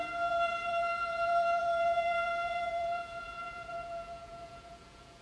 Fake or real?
fake